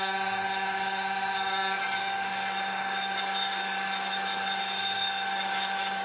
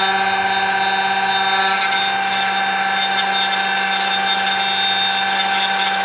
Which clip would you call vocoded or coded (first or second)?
first